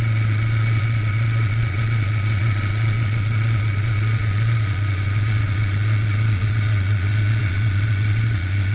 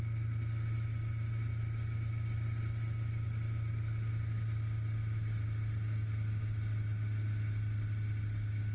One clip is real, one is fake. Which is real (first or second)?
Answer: second